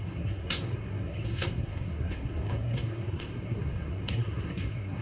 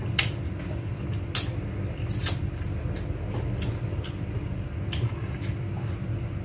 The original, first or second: second